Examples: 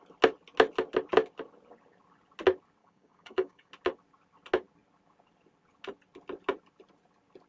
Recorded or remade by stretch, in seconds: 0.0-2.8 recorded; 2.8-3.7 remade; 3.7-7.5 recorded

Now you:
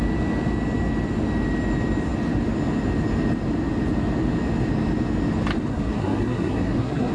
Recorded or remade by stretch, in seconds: 0.0-5.7 recorded; 5.7-7.1 remade

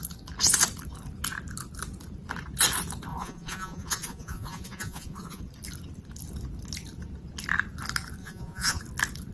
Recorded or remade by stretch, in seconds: 0.0-3.1 recorded; 3.1-5.4 remade; 5.4-8.2 recorded; 8.2-8.8 remade; 8.8-9.3 recorded

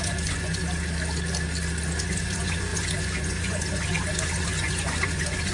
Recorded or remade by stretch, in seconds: 0.0-0.6 remade; 0.6-2.0 recorded; 2.0-5.5 remade

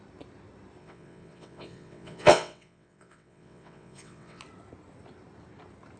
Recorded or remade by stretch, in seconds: 0.0-0.8 recorded; 0.8-4.4 remade; 4.4-6.0 recorded

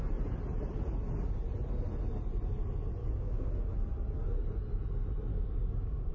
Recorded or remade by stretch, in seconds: 0.0-3.0 recorded; 3.0-3.5 remade; 3.5-5.3 recorded; 5.3-6.1 remade